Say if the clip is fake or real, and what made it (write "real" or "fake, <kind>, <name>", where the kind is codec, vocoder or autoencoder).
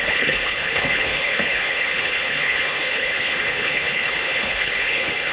fake, codec, HILCodec